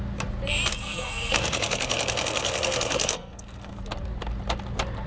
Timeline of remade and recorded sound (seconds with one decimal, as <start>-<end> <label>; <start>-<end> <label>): 0.0-0.7 recorded; 0.7-3.8 remade; 3.8-5.1 recorded

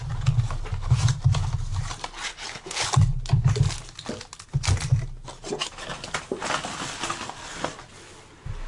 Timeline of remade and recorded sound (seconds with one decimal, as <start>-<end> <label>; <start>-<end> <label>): 0.0-2.3 recorded; 2.3-2.9 remade; 2.9-8.7 recorded